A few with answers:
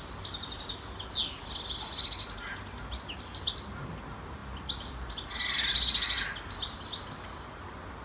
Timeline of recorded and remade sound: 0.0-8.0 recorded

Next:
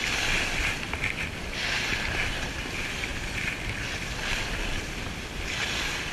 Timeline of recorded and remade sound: 0.0-3.1 recorded; 3.1-4.2 remade; 4.2-6.1 recorded

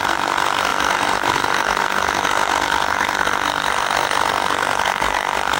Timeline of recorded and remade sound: 0.0-5.6 remade

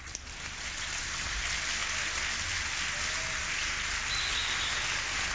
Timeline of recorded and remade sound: 0.0-5.3 recorded

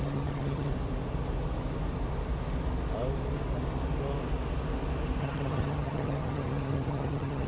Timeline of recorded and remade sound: 0.0-0.7 remade; 0.7-5.2 recorded; 5.2-7.5 remade

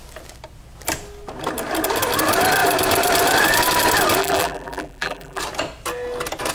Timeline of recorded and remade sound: 0.0-4.2 recorded; 4.2-5.4 remade; 5.4-6.5 recorded

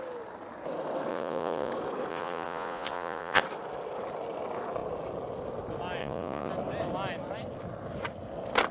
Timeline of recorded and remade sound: 0.0-1.1 recorded; 1.1-1.7 remade; 1.7-2.1 recorded; 2.1-3.4 remade; 3.4-6.0 recorded; 6.0-6.5 remade; 6.5-8.7 recorded